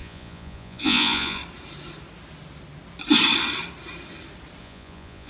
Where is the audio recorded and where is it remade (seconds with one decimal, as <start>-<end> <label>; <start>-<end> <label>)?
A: 0.0-1.4 remade; 1.4-4.6 recorded; 4.6-5.3 remade